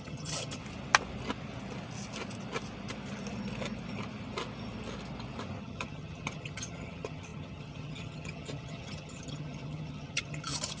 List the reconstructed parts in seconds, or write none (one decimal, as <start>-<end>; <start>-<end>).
0.0-0.6; 5.6-10.8